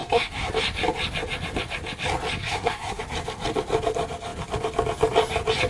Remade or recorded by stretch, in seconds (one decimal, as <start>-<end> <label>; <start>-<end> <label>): 0.0-0.5 remade; 0.5-2.4 recorded; 2.4-3.0 remade; 3.0-5.7 recorded